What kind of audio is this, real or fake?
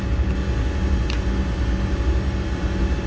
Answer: real